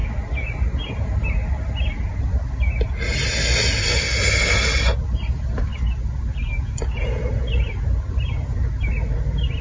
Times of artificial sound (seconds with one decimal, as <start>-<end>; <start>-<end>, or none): none